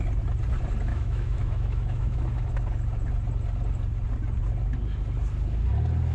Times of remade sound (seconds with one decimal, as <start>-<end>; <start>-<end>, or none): 0.9-2.5